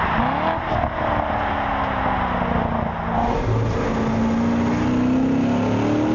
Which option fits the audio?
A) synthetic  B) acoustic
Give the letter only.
B